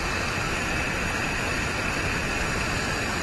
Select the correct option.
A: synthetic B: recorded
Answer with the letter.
B